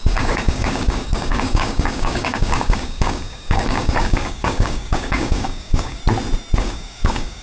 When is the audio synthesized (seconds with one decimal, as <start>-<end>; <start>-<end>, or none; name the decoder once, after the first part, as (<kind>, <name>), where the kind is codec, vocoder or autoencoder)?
0.0-6.0 (codec, DAC); 6.6-7.4